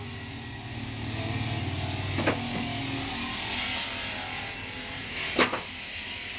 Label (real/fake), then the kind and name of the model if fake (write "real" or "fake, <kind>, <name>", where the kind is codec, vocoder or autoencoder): real